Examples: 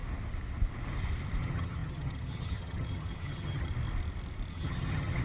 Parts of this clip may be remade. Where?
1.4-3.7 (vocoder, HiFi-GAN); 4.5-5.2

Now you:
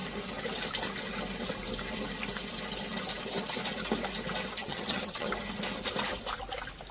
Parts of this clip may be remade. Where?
4.6-5.3 (vocoder, HiFi-GAN)

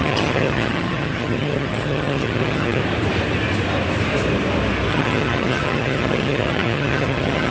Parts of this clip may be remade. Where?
0.0-2.8 (vocoder, HiFi-GAN); 4.9-7.5